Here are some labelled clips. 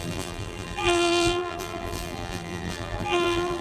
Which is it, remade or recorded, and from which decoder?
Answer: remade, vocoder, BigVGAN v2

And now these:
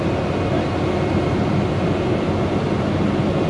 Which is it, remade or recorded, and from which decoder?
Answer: recorded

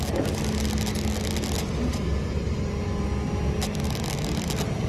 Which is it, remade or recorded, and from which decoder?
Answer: recorded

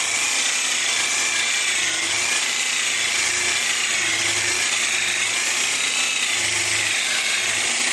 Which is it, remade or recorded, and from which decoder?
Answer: recorded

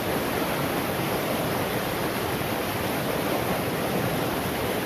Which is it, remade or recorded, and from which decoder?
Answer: recorded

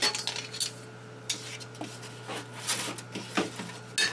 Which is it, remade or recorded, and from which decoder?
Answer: recorded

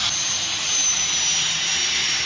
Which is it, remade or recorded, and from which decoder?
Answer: recorded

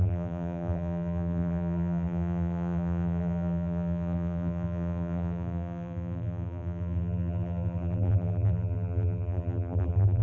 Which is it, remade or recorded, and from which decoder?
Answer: remade, vocoder, BigVGAN v2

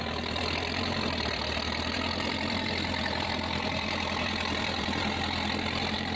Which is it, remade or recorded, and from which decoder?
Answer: remade, vocoder, BigVGAN v2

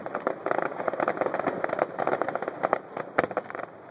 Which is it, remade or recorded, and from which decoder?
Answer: recorded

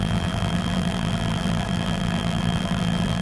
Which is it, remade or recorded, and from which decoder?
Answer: remade, vocoder, BigVGAN v2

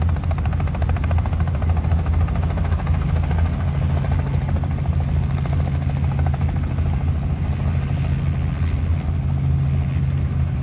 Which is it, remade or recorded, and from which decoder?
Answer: recorded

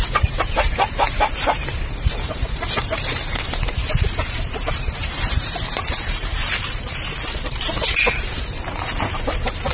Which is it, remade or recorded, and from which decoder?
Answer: remade, vocoder, BigVGAN v2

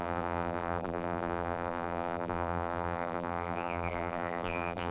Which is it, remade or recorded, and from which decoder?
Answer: remade, vocoder, BigVGAN v2